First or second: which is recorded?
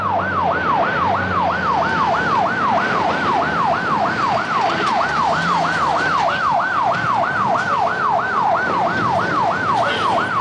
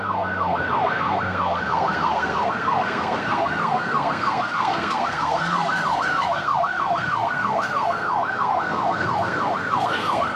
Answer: first